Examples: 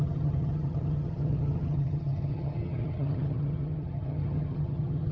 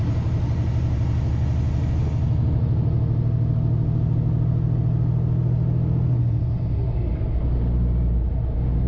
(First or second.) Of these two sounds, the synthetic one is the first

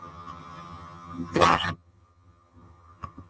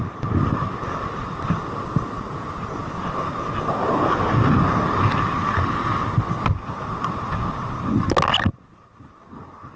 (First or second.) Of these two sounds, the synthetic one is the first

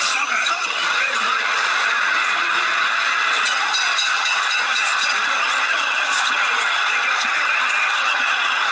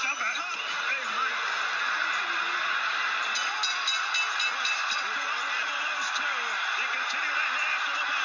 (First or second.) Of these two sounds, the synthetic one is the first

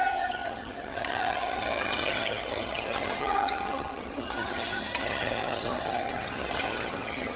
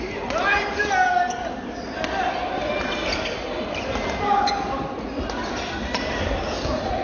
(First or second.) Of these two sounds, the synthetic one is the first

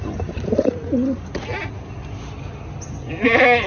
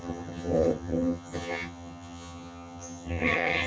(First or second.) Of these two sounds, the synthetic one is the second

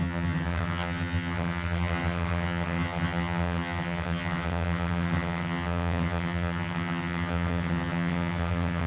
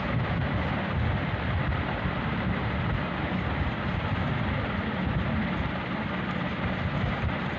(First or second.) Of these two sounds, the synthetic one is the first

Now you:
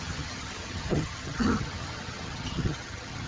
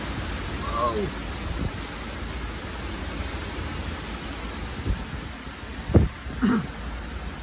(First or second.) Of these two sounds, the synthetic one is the first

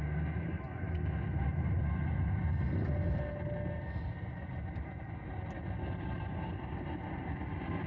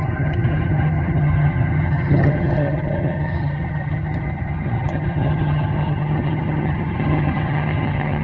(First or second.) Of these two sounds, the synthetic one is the second